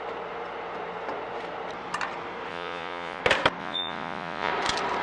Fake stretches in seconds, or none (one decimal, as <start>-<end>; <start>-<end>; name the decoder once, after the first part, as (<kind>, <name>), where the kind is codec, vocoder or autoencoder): 2.5-3.2 (vocoder, Vocos); 3.6-4.5